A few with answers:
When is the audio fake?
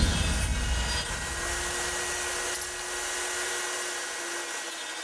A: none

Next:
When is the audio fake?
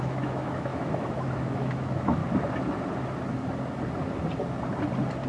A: 0.0-2.2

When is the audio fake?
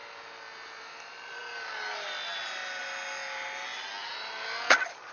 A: none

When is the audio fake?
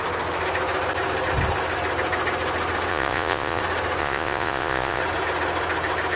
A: 2.9-3.6; 4.0-5.0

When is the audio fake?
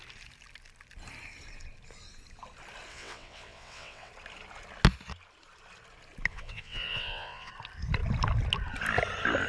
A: 2.9-4.1; 6.3-7.5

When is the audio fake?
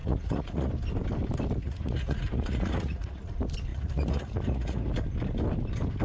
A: 0.0-0.7; 1.6-3.3; 3.7-4.9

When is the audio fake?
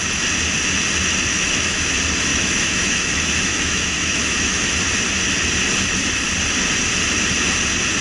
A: 1.3-1.9; 2.3-4.8